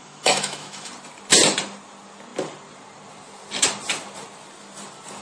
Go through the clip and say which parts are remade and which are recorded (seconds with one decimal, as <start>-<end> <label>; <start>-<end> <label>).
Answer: 0.0-0.9 remade; 0.9-5.2 recorded